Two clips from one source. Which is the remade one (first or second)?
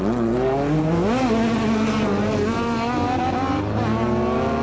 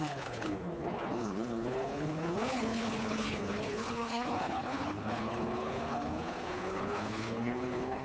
second